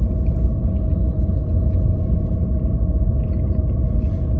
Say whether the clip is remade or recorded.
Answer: recorded